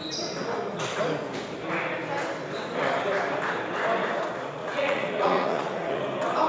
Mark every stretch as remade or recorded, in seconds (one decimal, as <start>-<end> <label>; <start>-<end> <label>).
0.0-4.6 recorded; 4.6-6.0 remade; 6.0-6.5 recorded